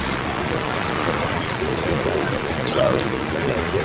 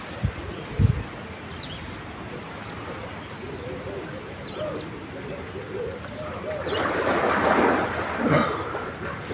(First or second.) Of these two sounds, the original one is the second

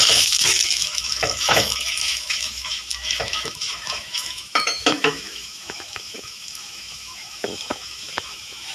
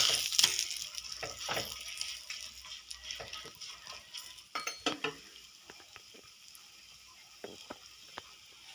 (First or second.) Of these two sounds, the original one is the second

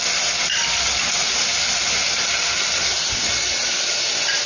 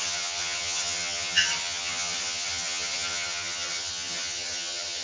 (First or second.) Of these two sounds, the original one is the first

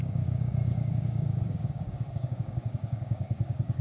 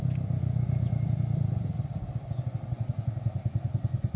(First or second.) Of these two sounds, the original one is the second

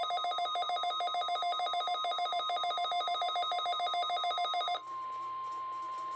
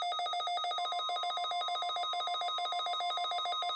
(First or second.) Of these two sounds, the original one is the second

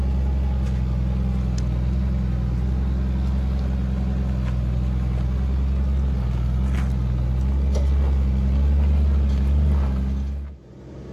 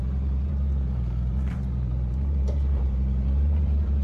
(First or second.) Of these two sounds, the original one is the first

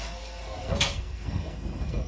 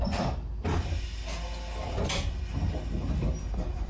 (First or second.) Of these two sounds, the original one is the second